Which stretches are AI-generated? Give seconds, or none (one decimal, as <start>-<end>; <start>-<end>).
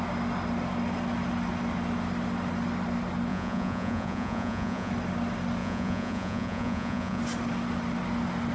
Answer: 3.3-4.9; 5.6-7.2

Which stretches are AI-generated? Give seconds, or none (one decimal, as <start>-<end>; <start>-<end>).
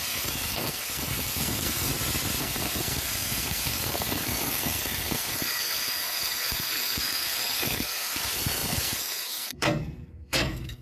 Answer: 0.0-1.9; 2.4-10.8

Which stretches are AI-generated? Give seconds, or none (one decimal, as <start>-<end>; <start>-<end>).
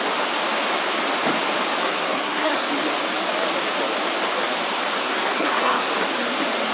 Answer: 1.8-2.7; 5.0-5.9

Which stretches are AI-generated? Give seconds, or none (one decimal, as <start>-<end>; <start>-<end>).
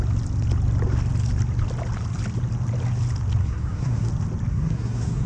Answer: 3.4-4.1; 4.5-5.3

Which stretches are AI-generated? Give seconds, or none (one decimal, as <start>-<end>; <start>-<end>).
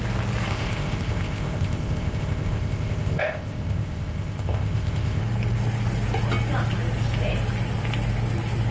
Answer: 0.5-5.2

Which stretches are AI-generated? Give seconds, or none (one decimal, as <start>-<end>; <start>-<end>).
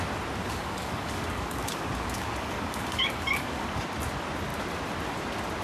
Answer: 0.4-3.8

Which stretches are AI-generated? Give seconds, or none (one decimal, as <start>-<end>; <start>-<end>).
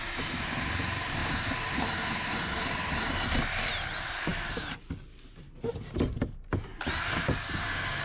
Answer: none